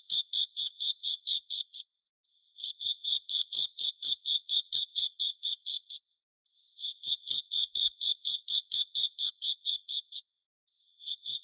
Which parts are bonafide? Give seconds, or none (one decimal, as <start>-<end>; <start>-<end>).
none